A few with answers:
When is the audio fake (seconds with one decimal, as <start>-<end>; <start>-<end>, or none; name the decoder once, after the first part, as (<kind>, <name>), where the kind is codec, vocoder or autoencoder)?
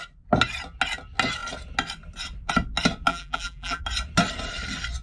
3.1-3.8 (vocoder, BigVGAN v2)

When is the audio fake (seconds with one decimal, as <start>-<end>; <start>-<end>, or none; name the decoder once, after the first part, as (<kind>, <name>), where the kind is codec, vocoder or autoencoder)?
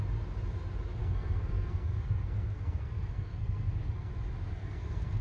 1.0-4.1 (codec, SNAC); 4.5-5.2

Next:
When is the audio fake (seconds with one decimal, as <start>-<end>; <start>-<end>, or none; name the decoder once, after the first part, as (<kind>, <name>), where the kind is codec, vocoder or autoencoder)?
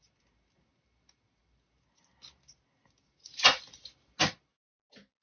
none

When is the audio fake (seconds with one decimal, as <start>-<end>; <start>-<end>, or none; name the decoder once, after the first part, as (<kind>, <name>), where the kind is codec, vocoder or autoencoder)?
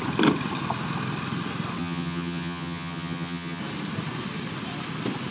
1.8-3.6 (vocoder, HiFi-GAN)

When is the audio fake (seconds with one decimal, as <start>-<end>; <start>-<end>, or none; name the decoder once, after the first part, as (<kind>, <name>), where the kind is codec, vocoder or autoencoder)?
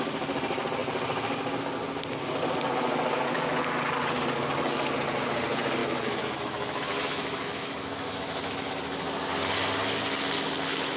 5.8-8.7 (autoencoder, DAC-VAE)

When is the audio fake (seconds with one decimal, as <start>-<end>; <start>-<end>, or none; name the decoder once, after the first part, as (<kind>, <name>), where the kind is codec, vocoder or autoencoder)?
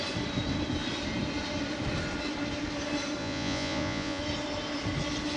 3.2-4.2 (vocoder, Vocos)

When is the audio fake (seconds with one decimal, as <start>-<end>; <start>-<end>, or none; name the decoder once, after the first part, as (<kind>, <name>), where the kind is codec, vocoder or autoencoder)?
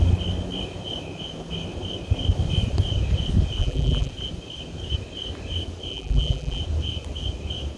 3.6-4.1 (vocoder, BigVGAN v2); 5.9-6.6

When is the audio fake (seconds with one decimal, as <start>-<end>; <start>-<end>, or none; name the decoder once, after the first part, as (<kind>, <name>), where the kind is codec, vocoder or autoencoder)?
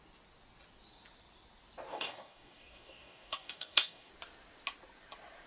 1.9-4.1 (codec, DAC)